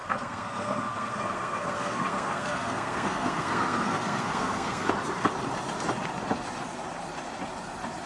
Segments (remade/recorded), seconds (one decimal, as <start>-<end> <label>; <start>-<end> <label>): 0.0-4.9 remade; 4.9-8.1 recorded